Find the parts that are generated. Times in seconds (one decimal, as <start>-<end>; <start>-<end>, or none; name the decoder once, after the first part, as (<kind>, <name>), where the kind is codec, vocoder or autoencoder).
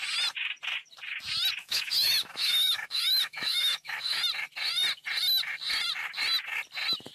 1.6-4.2 (autoencoder, DAC-VAE)